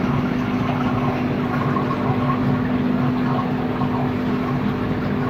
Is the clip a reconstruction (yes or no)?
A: no